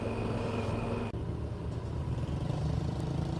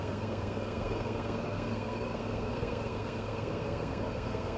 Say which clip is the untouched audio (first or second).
first